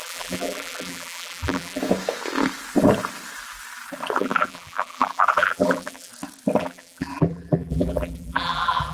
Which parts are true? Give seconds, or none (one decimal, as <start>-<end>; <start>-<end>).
1.8-4.2; 6.1-6.6